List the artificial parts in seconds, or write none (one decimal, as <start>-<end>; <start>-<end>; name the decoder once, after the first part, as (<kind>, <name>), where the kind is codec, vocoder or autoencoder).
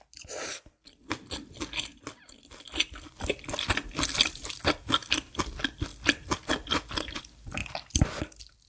none